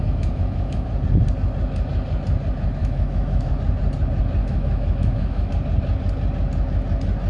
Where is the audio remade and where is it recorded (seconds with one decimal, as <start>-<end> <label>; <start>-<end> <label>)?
0.0-0.9 remade; 0.9-2.8 recorded; 2.8-3.5 remade; 3.5-4.4 recorded; 4.4-5.5 remade; 5.5-7.3 recorded